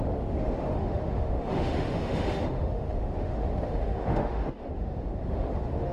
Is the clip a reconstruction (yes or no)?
yes